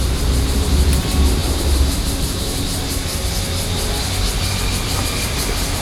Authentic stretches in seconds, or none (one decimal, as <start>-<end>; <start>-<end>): 3.2-4.8